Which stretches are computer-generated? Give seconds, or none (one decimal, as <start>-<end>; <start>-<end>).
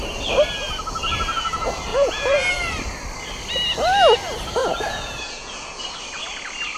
1.9-2.5; 4.6-5.8